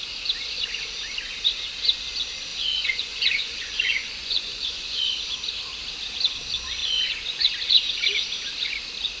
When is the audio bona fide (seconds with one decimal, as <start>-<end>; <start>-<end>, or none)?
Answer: 0.0-2.5; 5.0-6.8; 7.5-9.2